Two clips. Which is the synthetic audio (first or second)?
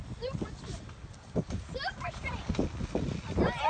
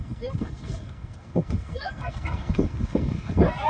second